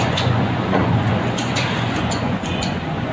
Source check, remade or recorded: remade